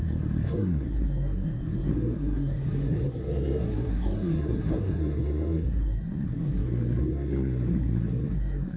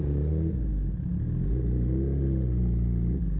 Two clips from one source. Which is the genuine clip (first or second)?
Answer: second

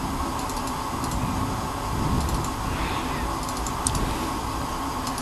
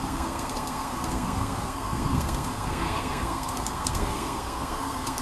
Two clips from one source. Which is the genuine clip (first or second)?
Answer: first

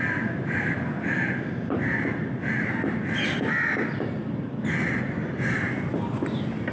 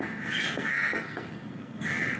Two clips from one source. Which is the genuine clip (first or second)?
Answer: first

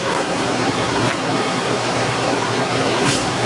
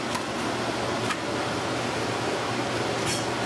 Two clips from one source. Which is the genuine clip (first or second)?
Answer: second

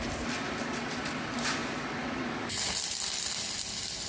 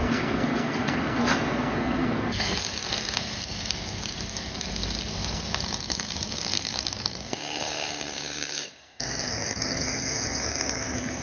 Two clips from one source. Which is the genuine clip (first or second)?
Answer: first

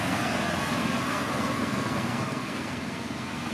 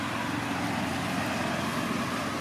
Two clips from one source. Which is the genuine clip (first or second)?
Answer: second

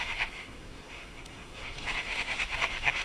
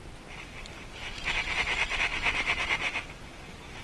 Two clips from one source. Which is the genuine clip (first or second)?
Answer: second